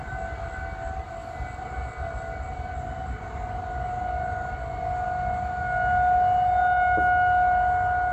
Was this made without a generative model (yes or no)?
yes